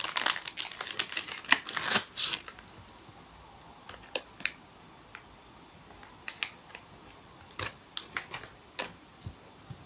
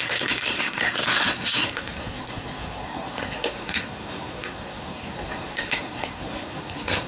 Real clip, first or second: first